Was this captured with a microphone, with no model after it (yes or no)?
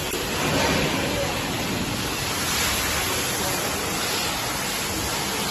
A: yes